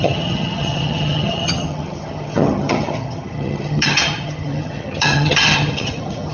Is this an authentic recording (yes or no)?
no